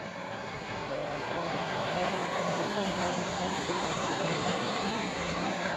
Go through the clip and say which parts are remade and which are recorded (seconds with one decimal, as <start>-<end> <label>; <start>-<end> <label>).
0.0-5.8 remade

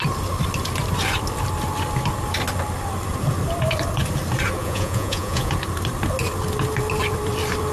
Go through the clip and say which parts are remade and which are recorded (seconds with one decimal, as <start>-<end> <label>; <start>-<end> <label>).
0.0-4.6 recorded; 4.6-5.5 remade; 5.5-7.7 recorded

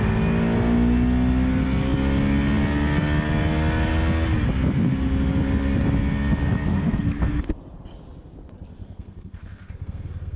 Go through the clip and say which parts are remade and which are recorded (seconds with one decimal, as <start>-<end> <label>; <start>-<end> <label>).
0.0-6.7 recorded; 6.7-7.5 remade; 7.5-8.8 recorded; 8.8-10.4 remade

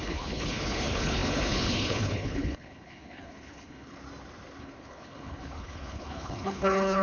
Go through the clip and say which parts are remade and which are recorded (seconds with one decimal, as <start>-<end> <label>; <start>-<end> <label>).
0.0-4.0 remade; 4.0-4.6 recorded; 4.6-7.0 remade

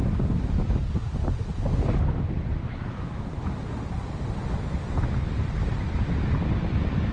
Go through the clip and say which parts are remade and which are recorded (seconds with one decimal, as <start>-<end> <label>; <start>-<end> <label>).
0.0-2.6 recorded; 2.6-3.6 remade; 3.6-7.1 recorded

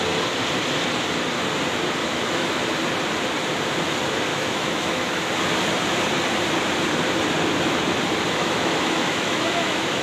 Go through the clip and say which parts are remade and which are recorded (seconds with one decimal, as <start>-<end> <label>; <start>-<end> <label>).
0.0-2.0 recorded; 2.0-2.5 remade; 2.5-4.3 recorded; 4.3-5.2 remade; 5.2-8.4 recorded; 8.4-10.0 remade

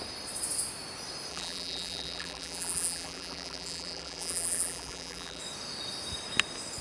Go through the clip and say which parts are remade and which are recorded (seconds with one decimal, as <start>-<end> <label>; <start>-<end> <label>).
0.0-1.3 recorded; 1.3-5.4 remade; 5.4-6.8 recorded

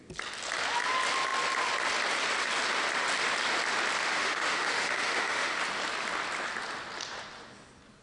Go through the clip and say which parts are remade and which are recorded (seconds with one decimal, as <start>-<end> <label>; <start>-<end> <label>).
0.0-4.0 recorded; 4.0-5.6 remade; 5.6-8.0 recorded